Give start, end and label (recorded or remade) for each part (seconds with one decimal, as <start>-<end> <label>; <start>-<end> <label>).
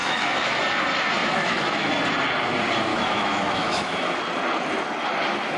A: 0.0-0.6 remade; 0.6-1.2 recorded; 1.2-1.9 remade; 1.9-2.9 recorded; 2.9-4.2 remade; 4.2-5.6 recorded